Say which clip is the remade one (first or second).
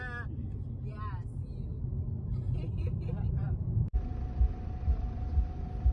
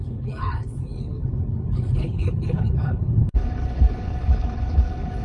second